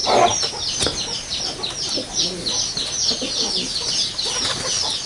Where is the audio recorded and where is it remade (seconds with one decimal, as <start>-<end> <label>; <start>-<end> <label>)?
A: 0.0-5.1 recorded